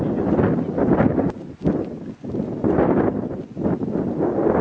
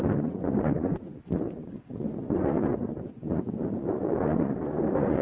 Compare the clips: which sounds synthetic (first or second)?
second